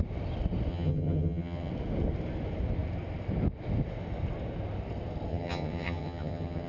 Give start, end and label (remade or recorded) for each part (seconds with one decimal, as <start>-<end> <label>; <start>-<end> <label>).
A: 0.0-0.7 recorded; 0.7-1.7 remade; 1.7-5.3 recorded; 5.3-6.7 remade